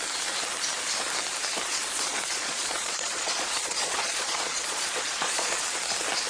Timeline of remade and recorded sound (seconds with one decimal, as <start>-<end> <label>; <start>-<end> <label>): 0.0-1.7 recorded; 1.7-5.5 remade; 5.5-6.3 recorded

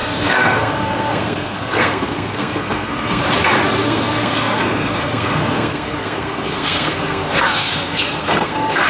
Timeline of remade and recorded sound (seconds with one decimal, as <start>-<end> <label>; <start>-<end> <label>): 0.0-3.2 remade; 3.2-3.8 recorded; 3.8-8.9 remade

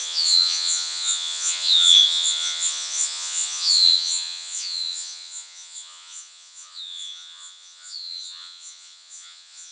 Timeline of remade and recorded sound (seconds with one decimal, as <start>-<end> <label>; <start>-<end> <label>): 0.0-9.7 remade

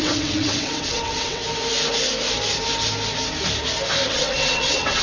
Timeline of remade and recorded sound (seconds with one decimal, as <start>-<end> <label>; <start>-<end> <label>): 0.0-1.4 remade; 1.4-4.1 recorded; 4.1-5.0 remade

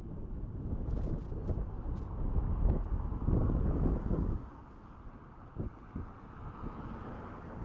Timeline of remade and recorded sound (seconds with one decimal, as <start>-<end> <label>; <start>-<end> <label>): 0.0-1.4 recorded; 1.4-2.2 remade; 2.2-7.6 recorded